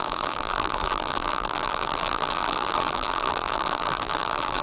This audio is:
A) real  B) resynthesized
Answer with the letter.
B